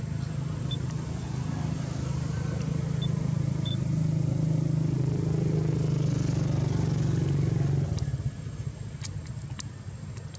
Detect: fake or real real